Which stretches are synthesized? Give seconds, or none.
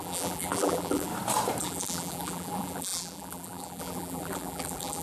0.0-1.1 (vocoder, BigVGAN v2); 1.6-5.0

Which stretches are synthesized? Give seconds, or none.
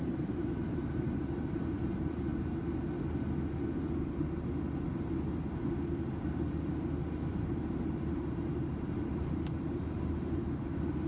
0.0-2.3 (vocoder, BigVGAN v2); 7.3-11.1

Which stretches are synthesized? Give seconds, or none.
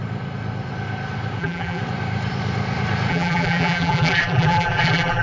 1.4-1.8 (vocoder, BigVGAN v2); 3.1-5.2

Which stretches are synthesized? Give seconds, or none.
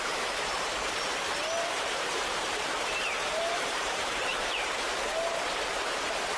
0.0-1.1 (vocoder, BigVGAN v2); 1.7-6.4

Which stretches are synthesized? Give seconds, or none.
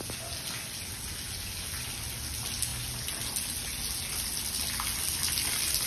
none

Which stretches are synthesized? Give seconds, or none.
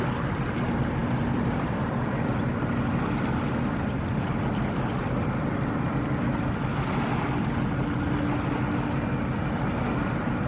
1.0-2.3 (vocoder, BigVGAN v2)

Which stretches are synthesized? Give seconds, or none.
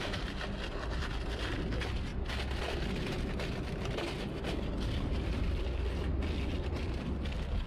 none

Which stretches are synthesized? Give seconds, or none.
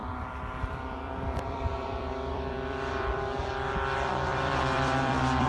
0.0-3.3 (vocoder, BigVGAN v2); 4.3-5.5